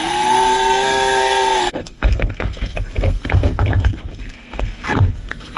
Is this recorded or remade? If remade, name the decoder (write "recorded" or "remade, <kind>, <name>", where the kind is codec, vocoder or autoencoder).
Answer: remade, codec, SNAC